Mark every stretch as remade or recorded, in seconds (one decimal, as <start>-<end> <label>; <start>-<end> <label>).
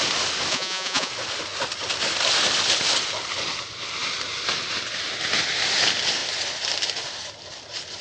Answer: 0.0-0.5 recorded; 0.5-1.1 remade; 1.1-8.0 recorded